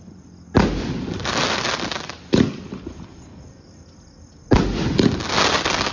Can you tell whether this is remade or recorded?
recorded